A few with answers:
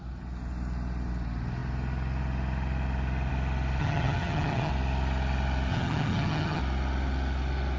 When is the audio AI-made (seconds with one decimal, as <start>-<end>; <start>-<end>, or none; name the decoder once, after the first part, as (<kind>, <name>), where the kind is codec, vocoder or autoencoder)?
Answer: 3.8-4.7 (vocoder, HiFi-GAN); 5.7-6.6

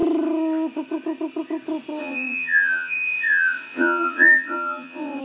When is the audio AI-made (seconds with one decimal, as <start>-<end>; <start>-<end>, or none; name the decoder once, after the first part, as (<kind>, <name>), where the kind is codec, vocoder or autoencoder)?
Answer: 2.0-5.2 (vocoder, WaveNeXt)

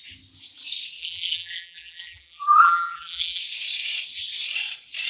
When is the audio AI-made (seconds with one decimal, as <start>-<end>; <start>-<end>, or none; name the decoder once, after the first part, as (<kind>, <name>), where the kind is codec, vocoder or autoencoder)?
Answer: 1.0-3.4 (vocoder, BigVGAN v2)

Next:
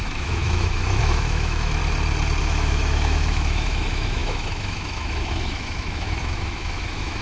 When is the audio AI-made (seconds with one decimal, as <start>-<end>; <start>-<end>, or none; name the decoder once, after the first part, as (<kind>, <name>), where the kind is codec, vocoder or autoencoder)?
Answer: 0.0-1.8 (autoencoder, DAC-VAE); 2.4-7.2

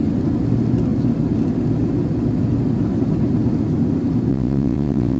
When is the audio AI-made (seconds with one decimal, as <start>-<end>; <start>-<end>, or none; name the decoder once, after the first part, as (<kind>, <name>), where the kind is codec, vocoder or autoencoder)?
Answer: 4.3-5.2 (vocoder, WaveNeXt)